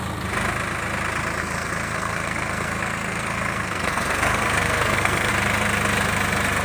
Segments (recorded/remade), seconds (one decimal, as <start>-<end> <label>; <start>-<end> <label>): 0.0-1.4 recorded; 1.4-5.3 remade; 5.3-6.6 recorded